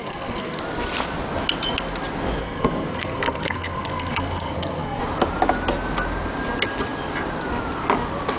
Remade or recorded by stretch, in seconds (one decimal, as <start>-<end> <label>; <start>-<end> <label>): 0.0-0.6 remade; 0.6-2.4 recorded; 2.4-5.0 remade; 5.0-8.4 recorded